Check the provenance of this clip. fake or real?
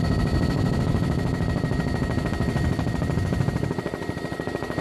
fake